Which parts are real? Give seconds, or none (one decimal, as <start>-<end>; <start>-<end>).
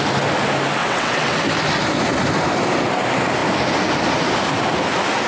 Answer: 0.0-0.8; 1.4-5.3